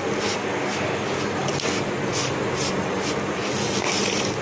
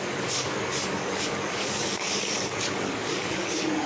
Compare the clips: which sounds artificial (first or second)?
second